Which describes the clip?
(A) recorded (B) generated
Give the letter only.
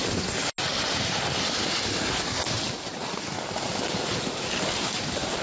A